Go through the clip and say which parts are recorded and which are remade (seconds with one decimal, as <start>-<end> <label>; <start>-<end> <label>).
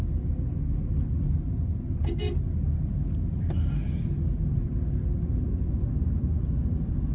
0.0-7.1 recorded